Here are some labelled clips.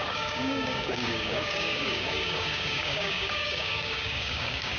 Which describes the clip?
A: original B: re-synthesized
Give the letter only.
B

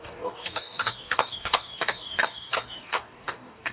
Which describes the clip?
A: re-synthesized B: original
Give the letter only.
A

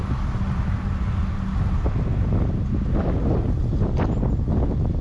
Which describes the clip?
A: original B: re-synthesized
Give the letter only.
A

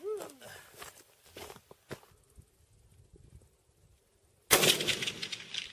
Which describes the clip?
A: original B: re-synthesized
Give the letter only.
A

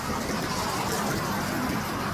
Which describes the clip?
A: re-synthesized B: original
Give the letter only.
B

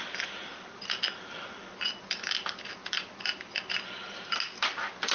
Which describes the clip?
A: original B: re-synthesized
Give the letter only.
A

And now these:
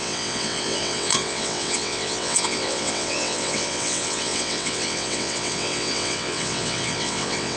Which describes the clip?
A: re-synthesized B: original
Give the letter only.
A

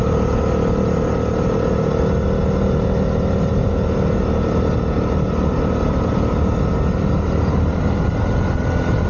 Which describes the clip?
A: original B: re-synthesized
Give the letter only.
A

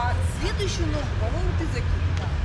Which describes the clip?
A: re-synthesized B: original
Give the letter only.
B